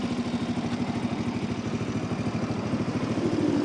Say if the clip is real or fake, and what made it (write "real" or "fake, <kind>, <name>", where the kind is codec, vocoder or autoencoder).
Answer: real